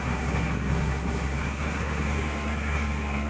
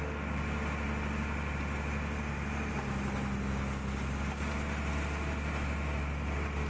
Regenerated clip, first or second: first